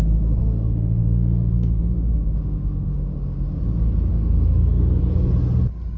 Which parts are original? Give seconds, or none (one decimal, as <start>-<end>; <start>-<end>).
0.0-0.4; 3.6-4.1; 5.0-6.0